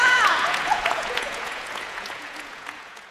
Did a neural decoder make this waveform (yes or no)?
yes